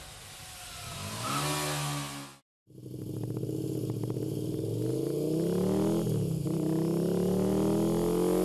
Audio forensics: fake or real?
real